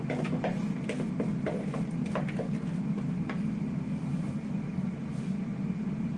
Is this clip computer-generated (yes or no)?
no